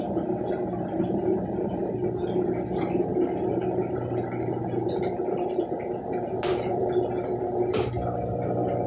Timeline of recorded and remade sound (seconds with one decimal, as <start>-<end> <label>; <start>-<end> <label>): 0.0-8.9 recorded